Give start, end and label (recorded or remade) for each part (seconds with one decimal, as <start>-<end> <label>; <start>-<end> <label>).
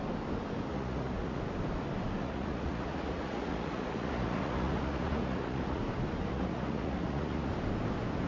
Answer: 0.0-0.7 recorded; 0.7-1.4 remade; 1.4-2.2 recorded; 2.2-5.8 remade; 5.8-6.3 recorded; 6.3-7.5 remade; 7.5-8.3 recorded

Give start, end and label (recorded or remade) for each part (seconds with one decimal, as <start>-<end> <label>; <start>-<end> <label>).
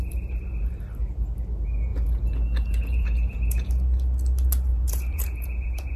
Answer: 0.0-1.9 recorded; 1.9-3.7 remade; 3.7-4.7 recorded; 4.7-6.0 remade